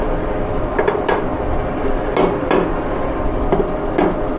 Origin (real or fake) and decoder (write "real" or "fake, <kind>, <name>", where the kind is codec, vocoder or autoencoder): real